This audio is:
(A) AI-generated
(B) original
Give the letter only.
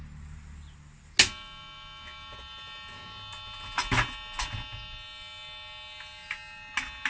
B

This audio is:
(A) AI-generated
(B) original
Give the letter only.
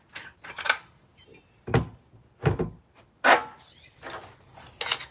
B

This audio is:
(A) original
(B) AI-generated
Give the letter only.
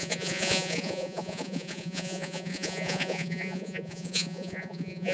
B